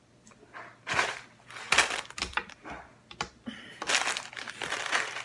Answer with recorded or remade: recorded